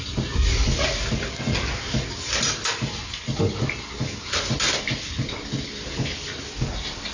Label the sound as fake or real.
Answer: real